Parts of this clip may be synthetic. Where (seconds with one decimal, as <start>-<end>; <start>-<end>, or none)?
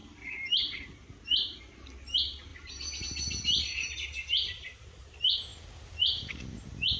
2.5-3.0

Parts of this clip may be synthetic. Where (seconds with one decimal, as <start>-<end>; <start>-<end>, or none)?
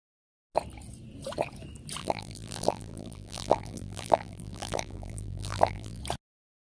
2.0-6.0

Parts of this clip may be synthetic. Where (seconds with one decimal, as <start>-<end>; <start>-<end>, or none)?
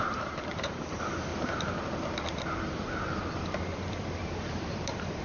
0.0-1.3; 4.4-5.2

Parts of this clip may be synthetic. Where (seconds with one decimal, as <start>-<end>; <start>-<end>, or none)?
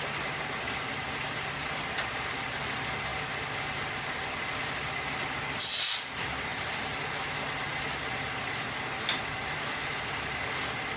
6.5-7.0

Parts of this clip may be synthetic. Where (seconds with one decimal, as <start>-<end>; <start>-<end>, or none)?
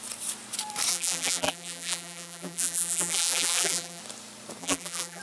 0.9-4.0; 4.6-5.2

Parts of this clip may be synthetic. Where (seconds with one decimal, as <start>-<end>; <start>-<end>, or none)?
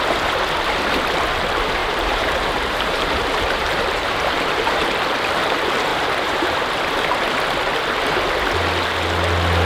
1.8-4.9; 5.9-6.6